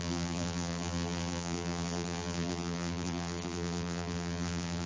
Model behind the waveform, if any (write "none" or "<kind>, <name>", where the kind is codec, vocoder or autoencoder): vocoder, BigVGAN v2